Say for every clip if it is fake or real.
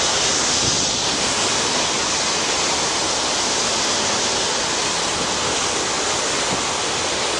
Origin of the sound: real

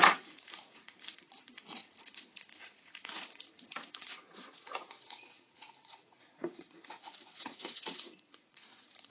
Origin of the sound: fake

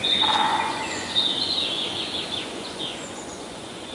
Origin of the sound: fake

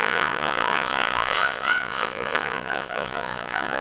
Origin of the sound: fake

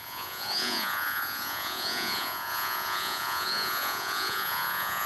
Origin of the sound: fake